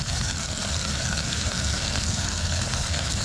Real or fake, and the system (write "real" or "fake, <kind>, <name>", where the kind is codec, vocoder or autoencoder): fake, codec, SNAC